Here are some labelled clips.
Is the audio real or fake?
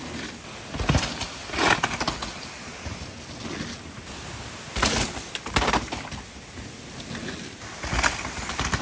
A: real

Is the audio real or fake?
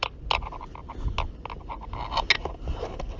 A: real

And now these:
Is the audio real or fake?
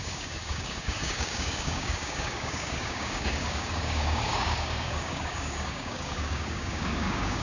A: fake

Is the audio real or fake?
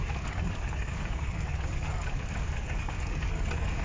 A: fake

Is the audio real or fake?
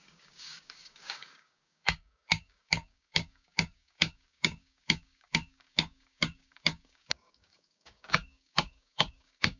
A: fake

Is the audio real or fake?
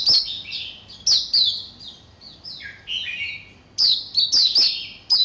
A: real